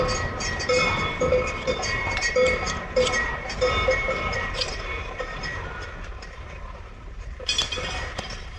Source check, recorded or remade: remade